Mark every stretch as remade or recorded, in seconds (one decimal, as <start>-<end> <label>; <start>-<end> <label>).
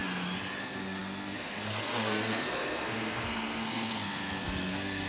0.0-0.6 recorded; 0.6-5.1 remade